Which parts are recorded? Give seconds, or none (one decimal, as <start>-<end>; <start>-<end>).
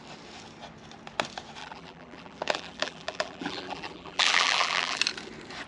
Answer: 0.0-1.6; 5.0-5.7